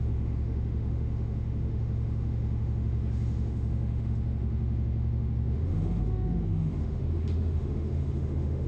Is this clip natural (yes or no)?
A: no